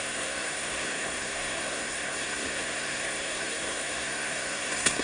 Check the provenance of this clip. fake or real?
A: fake